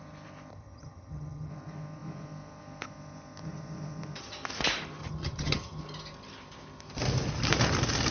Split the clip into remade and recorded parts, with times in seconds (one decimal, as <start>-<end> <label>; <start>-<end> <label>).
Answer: 0.0-0.5 recorded; 0.5-1.5 remade; 1.5-5.0 recorded; 5.0-5.8 remade; 5.8-8.1 recorded